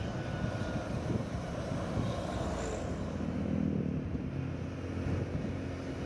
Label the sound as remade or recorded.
recorded